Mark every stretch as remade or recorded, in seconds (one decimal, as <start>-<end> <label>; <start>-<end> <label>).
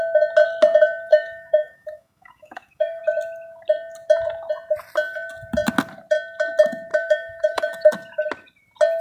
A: 0.0-1.1 recorded; 1.1-3.0 remade; 3.0-6.9 recorded; 6.9-7.9 remade; 7.9-9.0 recorded